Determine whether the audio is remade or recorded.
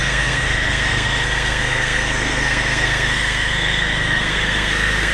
remade